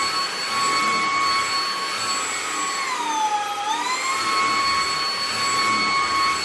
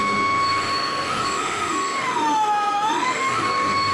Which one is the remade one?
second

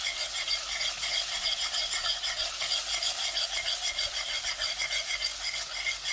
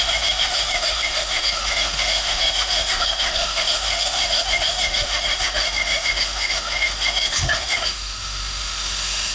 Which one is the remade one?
second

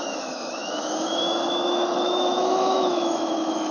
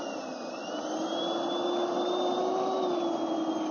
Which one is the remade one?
first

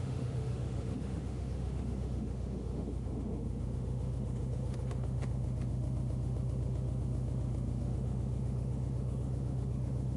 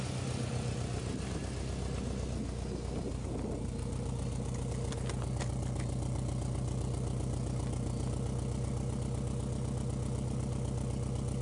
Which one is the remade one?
first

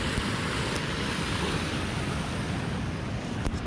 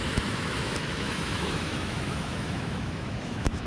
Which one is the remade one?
second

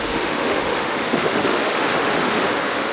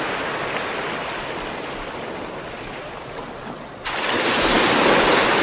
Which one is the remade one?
first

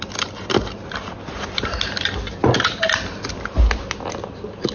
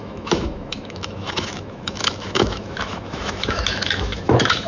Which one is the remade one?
second